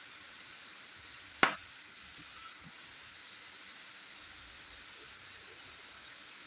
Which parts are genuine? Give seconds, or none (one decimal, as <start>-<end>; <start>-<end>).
0.0-6.5